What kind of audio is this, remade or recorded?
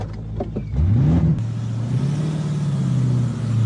recorded